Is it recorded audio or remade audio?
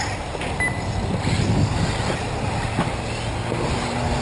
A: recorded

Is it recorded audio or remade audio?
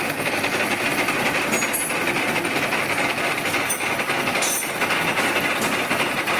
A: recorded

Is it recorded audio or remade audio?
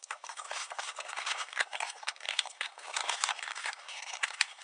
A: remade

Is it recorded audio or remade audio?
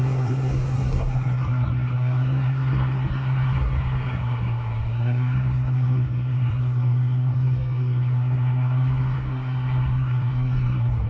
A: remade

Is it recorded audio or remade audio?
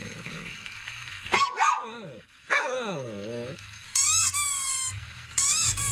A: remade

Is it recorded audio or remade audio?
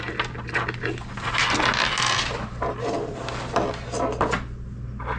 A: recorded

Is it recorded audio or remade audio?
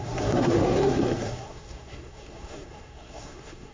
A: remade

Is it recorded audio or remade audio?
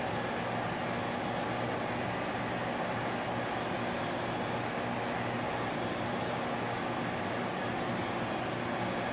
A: recorded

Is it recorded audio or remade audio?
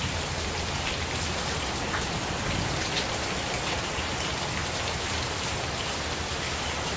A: recorded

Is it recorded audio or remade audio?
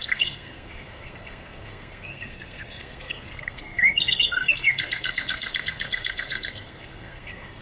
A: remade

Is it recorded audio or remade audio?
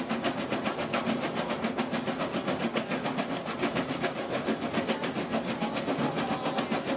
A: recorded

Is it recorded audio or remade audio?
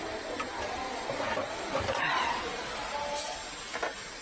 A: recorded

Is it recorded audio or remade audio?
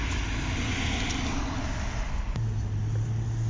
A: recorded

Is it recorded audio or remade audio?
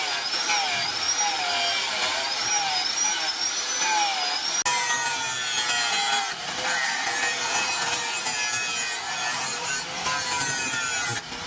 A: recorded